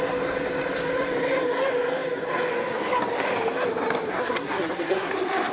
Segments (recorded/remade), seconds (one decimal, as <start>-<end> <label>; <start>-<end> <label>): 0.0-4.1 recorded; 4.1-5.1 remade; 5.1-5.5 recorded